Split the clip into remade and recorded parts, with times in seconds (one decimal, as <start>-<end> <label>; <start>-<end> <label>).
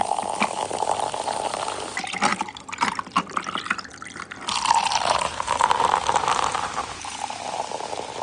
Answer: 0.0-2.3 recorded; 2.3-3.2 remade; 3.2-4.8 recorded; 4.8-7.2 remade; 7.2-8.2 recorded